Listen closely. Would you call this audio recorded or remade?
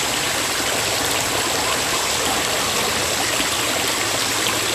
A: recorded